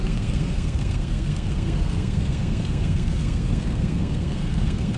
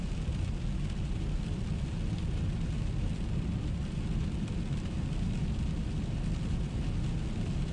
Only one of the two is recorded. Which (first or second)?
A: second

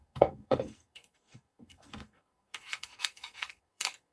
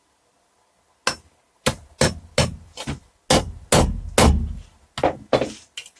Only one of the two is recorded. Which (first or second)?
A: second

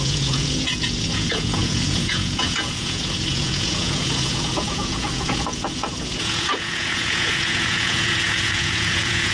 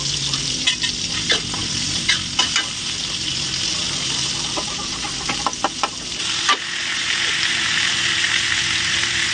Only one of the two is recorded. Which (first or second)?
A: second